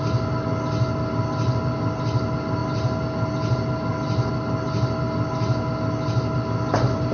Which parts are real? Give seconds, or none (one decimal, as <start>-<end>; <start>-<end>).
0.0-7.1